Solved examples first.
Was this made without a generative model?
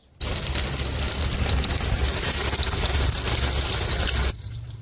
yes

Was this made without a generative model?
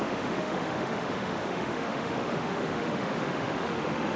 no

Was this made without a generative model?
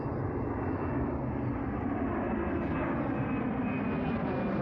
yes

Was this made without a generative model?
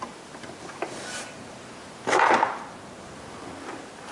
yes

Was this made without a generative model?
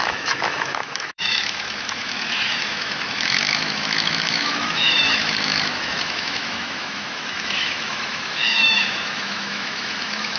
no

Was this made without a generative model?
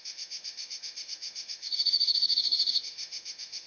no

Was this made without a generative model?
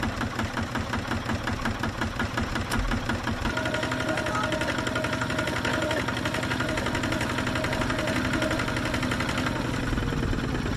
yes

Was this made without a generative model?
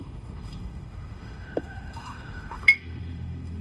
no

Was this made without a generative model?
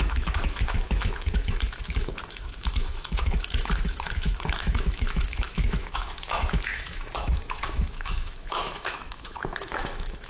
no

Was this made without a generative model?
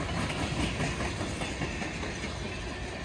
yes